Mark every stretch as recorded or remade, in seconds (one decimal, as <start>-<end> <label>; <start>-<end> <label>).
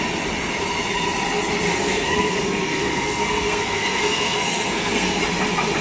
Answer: 0.0-1.7 recorded; 1.7-5.2 remade; 5.2-5.8 recorded